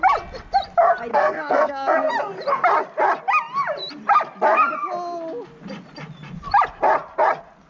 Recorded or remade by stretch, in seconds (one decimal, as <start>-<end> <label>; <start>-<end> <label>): 0.0-1.1 recorded; 1.1-2.1 remade; 2.1-7.7 recorded